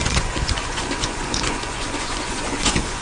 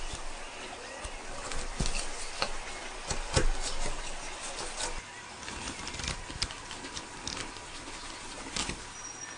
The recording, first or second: second